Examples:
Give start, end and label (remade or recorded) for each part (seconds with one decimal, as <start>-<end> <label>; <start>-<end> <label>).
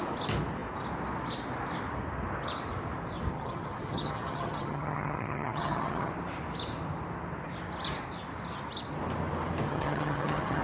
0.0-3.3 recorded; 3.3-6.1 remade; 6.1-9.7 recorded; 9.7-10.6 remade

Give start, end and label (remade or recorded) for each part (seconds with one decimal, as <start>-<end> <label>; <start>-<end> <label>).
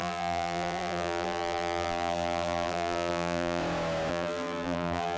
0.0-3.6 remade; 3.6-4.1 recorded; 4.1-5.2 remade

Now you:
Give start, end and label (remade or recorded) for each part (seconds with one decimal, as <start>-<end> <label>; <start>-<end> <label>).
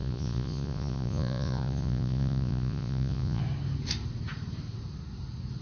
0.0-3.4 remade; 3.4-5.6 recorded